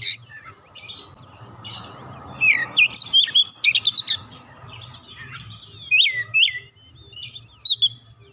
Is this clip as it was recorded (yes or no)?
yes